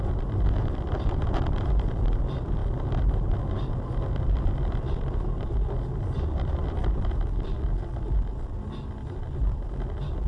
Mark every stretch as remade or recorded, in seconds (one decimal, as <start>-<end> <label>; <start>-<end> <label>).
0.0-2.6 remade; 2.6-3.5 recorded; 3.5-10.3 remade